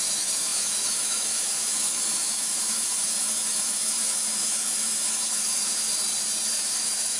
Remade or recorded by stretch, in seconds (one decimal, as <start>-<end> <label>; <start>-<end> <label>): 0.0-5.9 remade; 5.9-6.5 recorded; 6.5-7.2 remade